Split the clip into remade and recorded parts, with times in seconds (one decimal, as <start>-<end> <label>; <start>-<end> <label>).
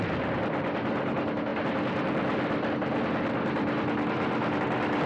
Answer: 0.0-5.1 recorded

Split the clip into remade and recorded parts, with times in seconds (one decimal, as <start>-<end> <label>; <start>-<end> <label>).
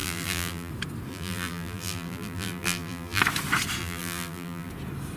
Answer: 0.0-0.7 remade; 0.7-1.1 recorded; 1.1-3.2 remade; 3.2-3.8 recorded; 3.8-4.7 remade; 4.7-5.2 recorded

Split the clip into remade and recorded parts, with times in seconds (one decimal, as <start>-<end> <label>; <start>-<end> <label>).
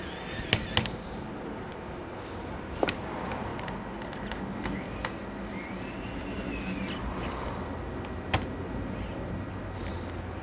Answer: 0.0-10.4 recorded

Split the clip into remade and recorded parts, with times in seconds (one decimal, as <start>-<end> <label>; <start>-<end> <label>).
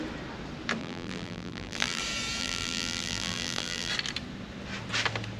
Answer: 0.0-0.8 recorded; 0.8-2.0 remade; 2.0-2.4 recorded; 2.4-3.9 remade; 3.9-5.4 recorded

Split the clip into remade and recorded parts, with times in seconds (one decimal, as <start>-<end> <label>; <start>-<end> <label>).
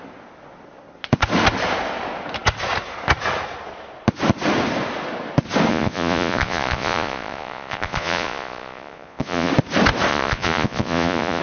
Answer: 0.0-5.7 recorded; 5.7-9.5 remade; 9.5-10.1 recorded; 10.1-11.4 remade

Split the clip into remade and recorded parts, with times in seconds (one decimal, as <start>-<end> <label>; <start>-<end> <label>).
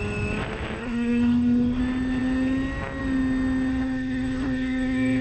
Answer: 0.0-0.8 recorded; 0.8-1.8 remade; 1.8-3.7 recorded; 3.7-5.2 remade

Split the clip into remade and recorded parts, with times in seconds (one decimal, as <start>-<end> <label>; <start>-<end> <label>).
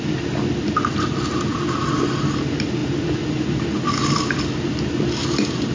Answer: 0.0-5.7 recorded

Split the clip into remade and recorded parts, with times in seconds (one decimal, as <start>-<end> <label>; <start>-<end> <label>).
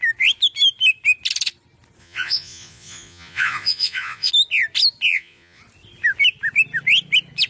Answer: 0.0-2.0 recorded; 2.0-4.3 remade; 4.3-5.1 recorded; 5.1-5.6 remade; 5.6-7.5 recorded